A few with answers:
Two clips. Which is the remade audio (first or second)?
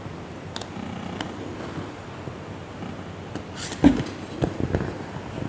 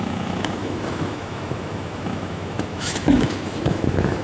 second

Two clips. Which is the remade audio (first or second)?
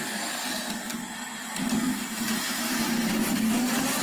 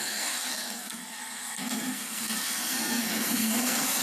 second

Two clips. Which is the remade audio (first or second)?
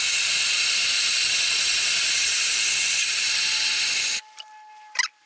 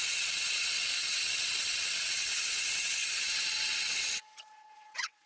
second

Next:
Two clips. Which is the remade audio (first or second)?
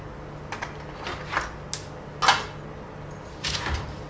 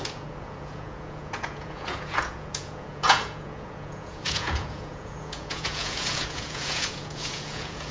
second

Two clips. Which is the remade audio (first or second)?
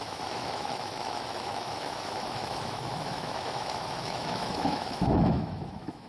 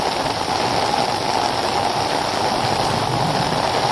first